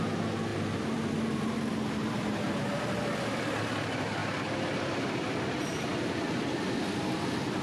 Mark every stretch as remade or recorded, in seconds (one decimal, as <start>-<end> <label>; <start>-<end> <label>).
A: 0.0-0.5 recorded; 0.5-2.7 remade; 2.7-7.6 recorded